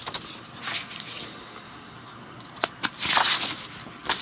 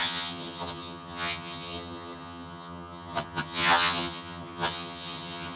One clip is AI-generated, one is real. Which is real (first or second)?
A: first